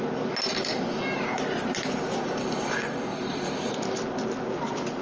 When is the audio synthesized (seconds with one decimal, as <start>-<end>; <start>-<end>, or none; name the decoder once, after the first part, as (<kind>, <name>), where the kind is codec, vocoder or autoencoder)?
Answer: 2.4-3.7 (codec, DAC)